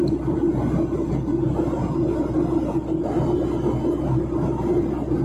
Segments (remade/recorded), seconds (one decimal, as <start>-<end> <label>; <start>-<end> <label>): 0.0-5.2 recorded